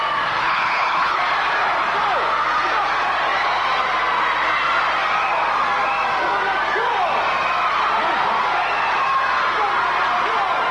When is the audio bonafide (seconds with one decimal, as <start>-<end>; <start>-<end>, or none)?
0.0-0.4; 1.2-10.7